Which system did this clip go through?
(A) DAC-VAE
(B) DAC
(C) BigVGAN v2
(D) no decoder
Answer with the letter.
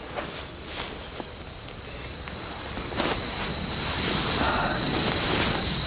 D